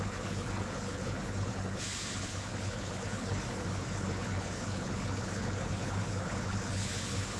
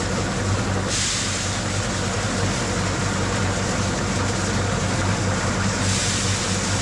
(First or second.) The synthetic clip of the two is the first